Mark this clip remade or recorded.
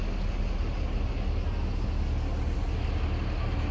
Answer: recorded